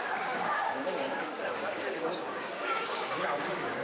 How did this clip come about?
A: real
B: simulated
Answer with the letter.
B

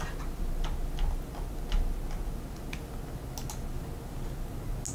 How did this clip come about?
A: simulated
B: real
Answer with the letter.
B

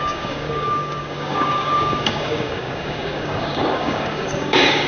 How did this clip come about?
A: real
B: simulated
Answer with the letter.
B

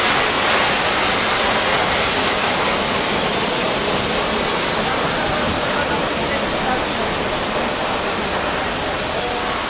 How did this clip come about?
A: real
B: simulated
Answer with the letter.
A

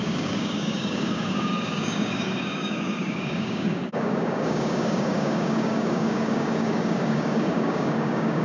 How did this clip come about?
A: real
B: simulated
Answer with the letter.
B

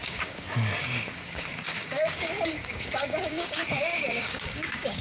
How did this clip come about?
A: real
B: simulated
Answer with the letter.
B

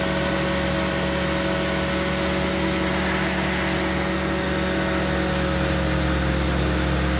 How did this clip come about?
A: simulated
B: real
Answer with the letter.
B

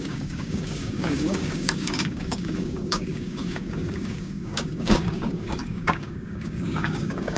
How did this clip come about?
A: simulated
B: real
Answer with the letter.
A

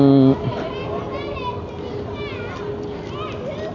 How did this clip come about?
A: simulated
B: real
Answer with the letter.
B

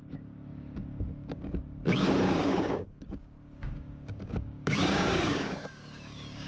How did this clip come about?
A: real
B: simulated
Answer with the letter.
B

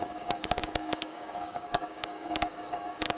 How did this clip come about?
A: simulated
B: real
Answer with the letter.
A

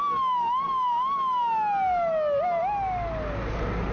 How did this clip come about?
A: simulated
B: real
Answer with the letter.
B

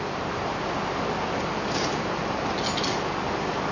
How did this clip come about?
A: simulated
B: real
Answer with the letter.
B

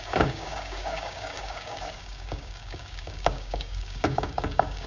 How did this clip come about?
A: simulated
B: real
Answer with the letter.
A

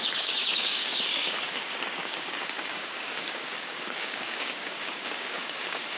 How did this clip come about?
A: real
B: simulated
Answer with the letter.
B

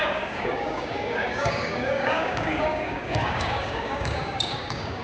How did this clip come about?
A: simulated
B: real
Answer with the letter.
A